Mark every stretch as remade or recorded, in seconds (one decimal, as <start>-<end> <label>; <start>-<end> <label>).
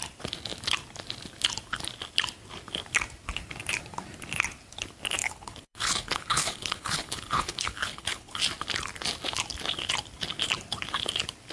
0.0-5.2 recorded; 5.2-8.4 remade; 8.4-11.5 recorded